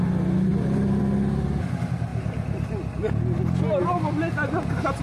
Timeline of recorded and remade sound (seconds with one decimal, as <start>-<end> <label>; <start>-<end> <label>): 0.0-0.5 recorded; 0.5-1.0 remade; 1.0-5.0 recorded